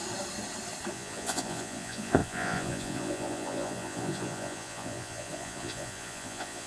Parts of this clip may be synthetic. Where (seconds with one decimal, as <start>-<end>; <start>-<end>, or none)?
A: 0.9-6.7

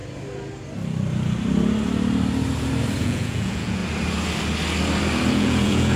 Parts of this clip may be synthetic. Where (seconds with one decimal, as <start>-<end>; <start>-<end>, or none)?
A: 3.0-3.8; 5.3-6.0

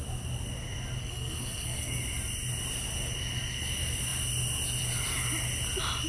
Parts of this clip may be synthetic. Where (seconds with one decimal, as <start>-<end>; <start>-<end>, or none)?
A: 1.0-2.0

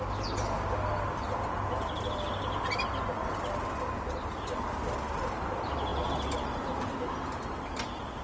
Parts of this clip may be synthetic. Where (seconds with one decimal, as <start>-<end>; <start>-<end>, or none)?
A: none

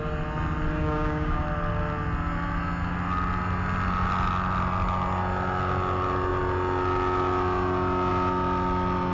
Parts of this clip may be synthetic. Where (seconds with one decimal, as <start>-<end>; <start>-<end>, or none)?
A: 0.7-1.4

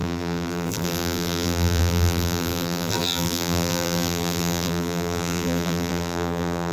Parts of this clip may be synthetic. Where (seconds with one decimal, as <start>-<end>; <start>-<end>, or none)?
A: 0.0-6.7